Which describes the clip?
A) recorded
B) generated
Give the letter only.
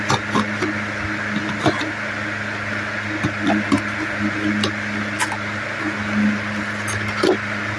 A